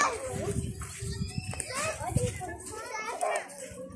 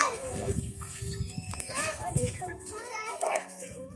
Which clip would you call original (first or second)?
first